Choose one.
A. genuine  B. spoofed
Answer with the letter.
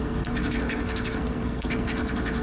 B